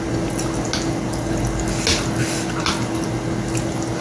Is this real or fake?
real